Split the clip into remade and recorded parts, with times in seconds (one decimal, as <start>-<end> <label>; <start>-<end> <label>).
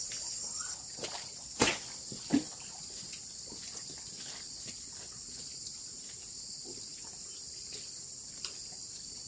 0.0-9.3 recorded